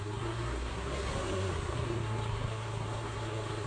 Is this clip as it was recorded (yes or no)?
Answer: no